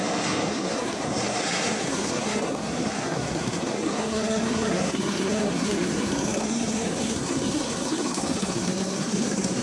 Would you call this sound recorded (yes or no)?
no